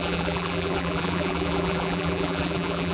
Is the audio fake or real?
fake